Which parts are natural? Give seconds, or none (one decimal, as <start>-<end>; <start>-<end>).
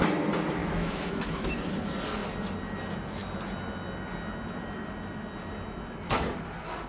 0.0-0.6; 1.5-6.9